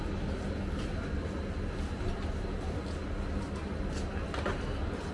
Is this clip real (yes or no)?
yes